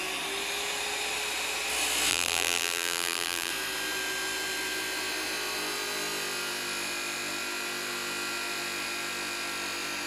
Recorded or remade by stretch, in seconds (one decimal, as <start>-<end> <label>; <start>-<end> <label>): 0.0-2.1 recorded; 2.1-3.5 remade; 3.5-10.1 recorded